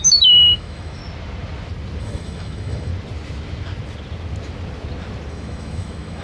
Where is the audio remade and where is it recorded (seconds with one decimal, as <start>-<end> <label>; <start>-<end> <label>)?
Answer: 0.0-1.0 remade; 1.0-2.0 recorded; 2.0-2.9 remade; 2.9-5.3 recorded; 5.3-6.2 remade